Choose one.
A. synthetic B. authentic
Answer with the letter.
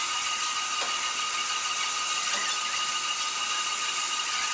B